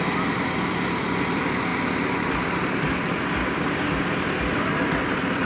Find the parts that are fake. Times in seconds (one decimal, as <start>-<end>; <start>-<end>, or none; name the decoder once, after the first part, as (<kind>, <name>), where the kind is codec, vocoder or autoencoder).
3.4-4.0 (codec, DAC)